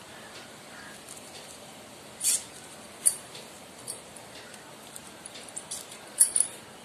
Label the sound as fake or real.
fake